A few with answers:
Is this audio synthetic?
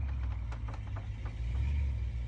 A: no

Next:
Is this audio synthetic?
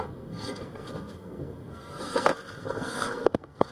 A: yes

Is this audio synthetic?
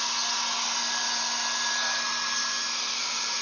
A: no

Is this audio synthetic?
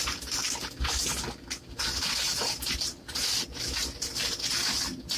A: no